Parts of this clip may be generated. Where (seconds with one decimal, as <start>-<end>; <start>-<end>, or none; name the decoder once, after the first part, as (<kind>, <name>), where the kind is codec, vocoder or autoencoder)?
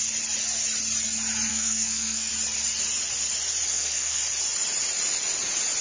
1.5-2.3 (codec, SNAC); 3.7-4.2